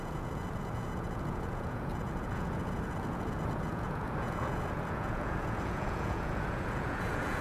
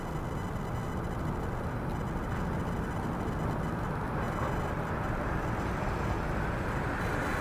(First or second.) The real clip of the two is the second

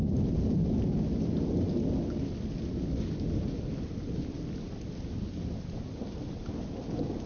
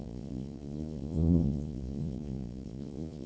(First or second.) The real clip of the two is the first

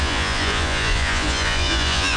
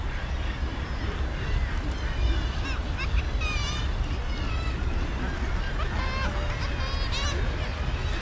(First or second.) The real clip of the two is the second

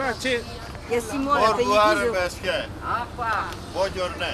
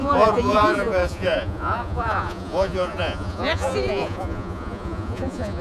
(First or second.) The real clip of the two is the first